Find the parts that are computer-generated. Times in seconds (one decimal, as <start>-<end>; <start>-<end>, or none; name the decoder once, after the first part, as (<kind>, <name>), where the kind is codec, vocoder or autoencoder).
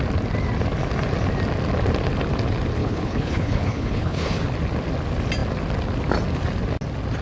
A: 2.8-4.4 (codec, HILCodec)